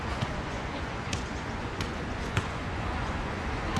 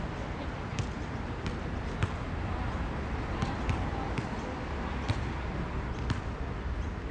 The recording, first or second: second